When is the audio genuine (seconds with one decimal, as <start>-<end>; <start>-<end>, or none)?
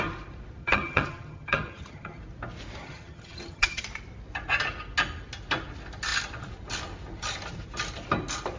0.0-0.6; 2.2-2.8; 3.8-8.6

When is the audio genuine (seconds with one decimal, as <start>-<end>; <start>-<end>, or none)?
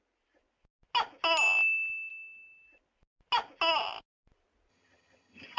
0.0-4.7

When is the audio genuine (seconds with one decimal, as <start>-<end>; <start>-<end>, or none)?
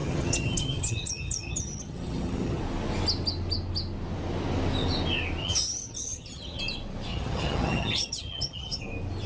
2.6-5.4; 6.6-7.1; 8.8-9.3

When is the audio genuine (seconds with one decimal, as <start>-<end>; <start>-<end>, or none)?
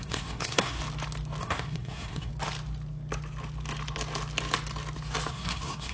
0.8-1.4; 2.3-5.3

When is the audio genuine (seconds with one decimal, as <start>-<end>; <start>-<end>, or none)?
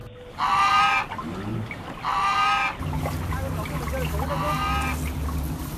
0.0-5.8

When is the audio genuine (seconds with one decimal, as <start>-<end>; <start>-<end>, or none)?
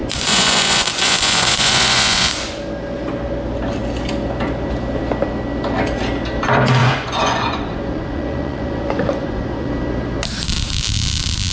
2.6-6.8; 9.7-11.5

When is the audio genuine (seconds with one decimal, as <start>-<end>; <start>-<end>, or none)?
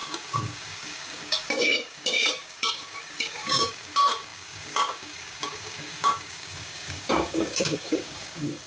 none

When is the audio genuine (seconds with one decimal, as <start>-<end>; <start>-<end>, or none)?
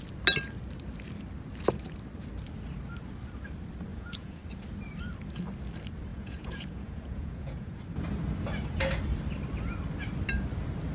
0.0-3.9; 4.4-6.1; 7.8-10.9